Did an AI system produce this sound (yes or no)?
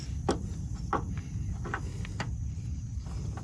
no